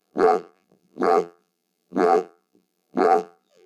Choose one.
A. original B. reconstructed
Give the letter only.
B